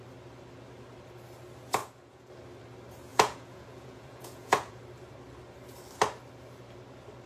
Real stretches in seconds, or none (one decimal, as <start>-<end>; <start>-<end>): 0.0-1.8; 2.3-3.1; 4.8-7.3